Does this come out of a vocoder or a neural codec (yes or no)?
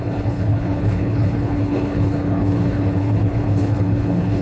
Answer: yes